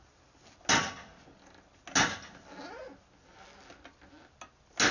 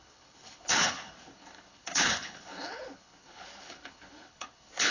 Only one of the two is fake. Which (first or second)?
second